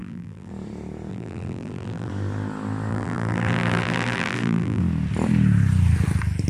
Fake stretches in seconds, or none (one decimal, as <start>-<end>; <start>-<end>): 0.0-0.5; 1.1-2.1; 2.9-4.8